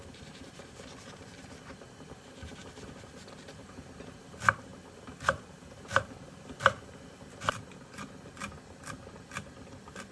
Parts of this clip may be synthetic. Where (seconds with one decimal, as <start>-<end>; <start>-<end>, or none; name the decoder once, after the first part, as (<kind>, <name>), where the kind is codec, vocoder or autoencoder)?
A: none